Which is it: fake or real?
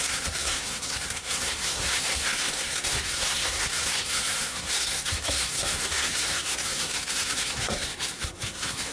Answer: fake